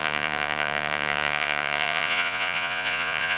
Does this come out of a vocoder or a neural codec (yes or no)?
yes